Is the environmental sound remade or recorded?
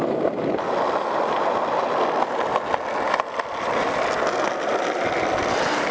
recorded